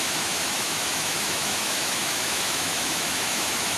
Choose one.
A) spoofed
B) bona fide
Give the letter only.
A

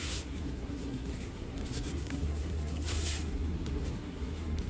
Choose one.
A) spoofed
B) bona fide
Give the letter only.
A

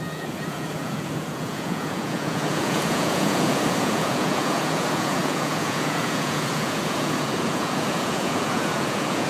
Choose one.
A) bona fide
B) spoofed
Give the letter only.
B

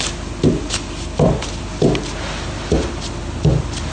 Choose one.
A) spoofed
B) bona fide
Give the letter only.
B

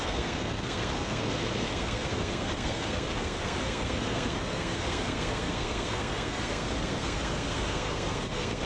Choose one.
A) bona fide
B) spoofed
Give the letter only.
B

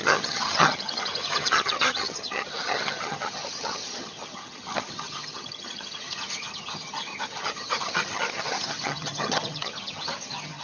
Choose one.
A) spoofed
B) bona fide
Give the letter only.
A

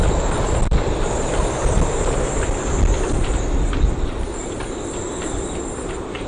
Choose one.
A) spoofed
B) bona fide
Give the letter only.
B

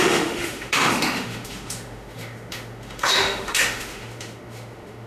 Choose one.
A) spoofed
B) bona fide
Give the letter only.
A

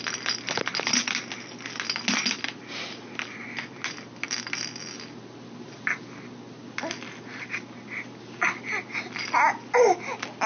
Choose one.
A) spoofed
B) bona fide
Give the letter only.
B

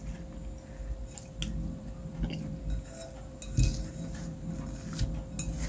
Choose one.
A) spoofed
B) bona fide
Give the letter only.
B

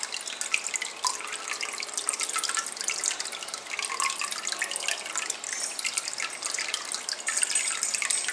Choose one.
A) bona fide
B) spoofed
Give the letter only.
A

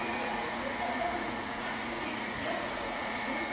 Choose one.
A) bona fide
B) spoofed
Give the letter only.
B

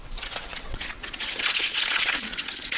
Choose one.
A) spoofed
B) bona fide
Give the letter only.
A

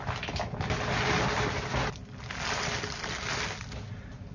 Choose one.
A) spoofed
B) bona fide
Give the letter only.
B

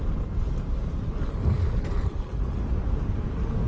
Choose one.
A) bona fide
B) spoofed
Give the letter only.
A